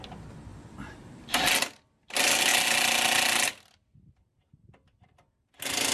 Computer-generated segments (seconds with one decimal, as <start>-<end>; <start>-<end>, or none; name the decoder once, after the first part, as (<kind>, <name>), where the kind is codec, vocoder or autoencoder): 0.5-1.4 (vocoder, BigVGAN v2); 2.5-5.3